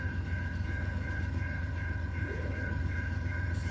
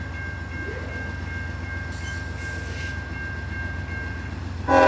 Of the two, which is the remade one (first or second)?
first